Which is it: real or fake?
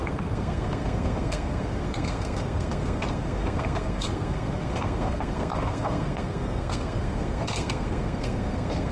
fake